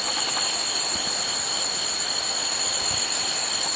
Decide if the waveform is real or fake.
real